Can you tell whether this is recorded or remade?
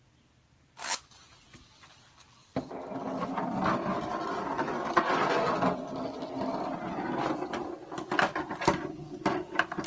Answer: recorded